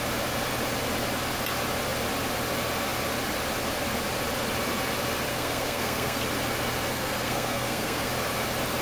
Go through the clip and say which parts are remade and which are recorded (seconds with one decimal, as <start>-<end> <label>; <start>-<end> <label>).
0.0-5.3 recorded; 5.3-6.2 remade; 6.2-6.9 recorded; 6.9-8.1 remade; 8.1-8.8 recorded

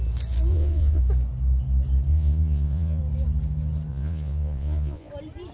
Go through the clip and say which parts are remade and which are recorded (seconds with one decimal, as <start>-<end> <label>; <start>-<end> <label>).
0.0-0.5 recorded; 0.5-1.0 remade; 1.0-2.1 recorded; 2.1-3.0 remade; 3.0-3.9 recorded; 3.9-5.1 remade; 5.1-5.5 recorded

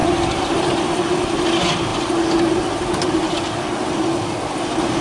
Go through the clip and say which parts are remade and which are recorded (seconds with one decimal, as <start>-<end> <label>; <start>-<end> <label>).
0.0-5.0 recorded

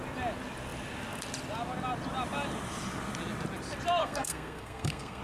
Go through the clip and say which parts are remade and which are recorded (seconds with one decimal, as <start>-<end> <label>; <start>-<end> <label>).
0.0-4.0 recorded; 4.0-5.2 remade

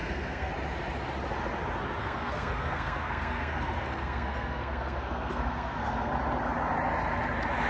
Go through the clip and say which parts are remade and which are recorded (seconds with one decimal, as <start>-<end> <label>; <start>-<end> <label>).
0.0-0.5 remade; 0.5-2.0 recorded; 2.0-6.1 remade; 6.1-7.7 recorded

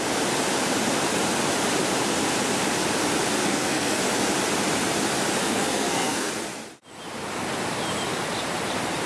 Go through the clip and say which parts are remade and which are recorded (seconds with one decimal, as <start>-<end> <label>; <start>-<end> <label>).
0.0-3.4 recorded; 3.4-4.0 remade; 4.0-5.4 recorded; 5.4-6.3 remade; 6.3-9.1 recorded

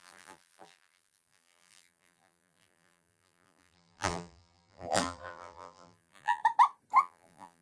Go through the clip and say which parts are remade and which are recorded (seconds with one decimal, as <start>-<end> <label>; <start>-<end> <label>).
0.0-6.4 remade; 6.4-7.0 recorded; 7.0-7.6 remade